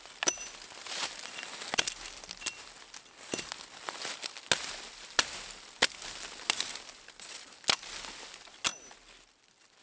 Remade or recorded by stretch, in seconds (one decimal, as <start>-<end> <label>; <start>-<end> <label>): 0.0-9.8 recorded